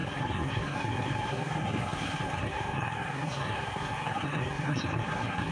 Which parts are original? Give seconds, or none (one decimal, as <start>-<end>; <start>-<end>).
none